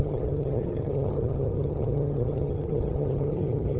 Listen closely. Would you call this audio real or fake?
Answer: fake